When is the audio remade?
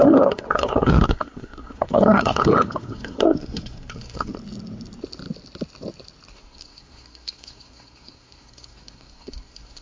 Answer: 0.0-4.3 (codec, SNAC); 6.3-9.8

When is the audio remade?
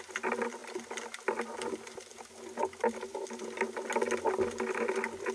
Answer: none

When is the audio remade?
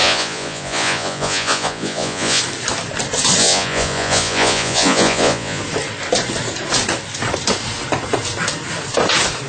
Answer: 0.0-2.4 (vocoder, Vocos); 3.4-5.6